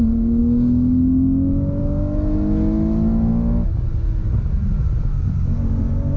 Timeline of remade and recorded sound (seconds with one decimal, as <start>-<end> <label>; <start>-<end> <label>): 0.0-6.2 recorded